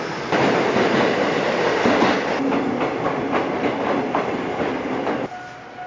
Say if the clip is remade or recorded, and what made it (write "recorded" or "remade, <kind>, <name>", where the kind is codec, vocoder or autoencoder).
recorded